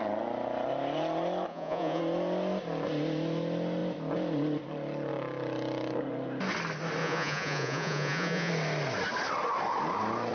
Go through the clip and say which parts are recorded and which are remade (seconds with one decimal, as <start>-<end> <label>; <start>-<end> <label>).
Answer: 0.0-1.5 recorded; 1.5-2.0 remade; 2.0-7.0 recorded; 7.0-8.5 remade; 8.5-10.3 recorded